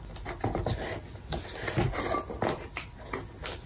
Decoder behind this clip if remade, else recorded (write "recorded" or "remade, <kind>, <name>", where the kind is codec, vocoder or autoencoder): recorded